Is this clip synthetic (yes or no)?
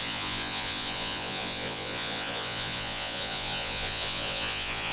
yes